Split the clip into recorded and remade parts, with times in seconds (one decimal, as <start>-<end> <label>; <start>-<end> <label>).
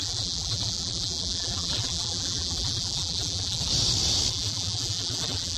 0.0-3.7 remade; 3.7-4.3 recorded; 4.3-5.6 remade